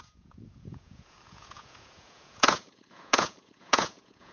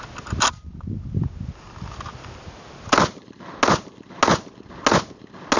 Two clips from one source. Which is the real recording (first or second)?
second